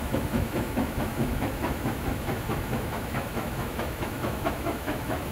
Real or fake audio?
fake